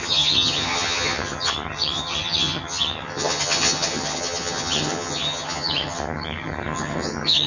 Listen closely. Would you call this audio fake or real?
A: fake